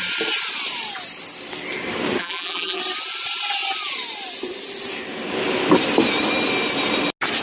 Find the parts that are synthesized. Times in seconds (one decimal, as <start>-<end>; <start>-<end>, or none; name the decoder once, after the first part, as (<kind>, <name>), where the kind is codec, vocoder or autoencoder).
2.2-2.8 (vocoder, BigVGAN v2)